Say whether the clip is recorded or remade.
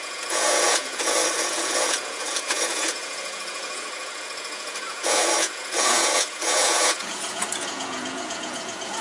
remade